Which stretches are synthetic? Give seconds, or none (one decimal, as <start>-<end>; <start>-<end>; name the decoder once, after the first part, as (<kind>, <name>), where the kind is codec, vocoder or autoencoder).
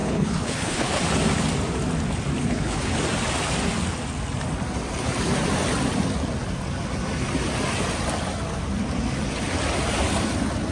0.0-1.0 (codec, HILCodec); 2.4-2.9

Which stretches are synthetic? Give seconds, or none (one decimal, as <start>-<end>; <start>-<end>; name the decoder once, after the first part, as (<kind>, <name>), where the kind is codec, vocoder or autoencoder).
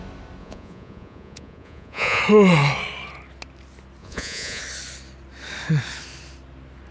0.4-2.2 (vocoder, Vocos); 4.0-4.6